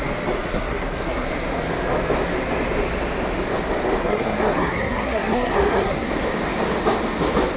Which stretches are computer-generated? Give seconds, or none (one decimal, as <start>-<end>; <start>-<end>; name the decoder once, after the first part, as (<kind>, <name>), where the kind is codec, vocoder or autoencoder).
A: 0.5-1.3 (codec, SNAC); 4.0-6.1